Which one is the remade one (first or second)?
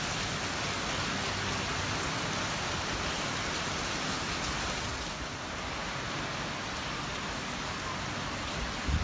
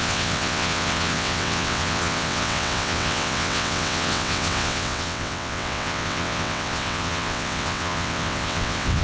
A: second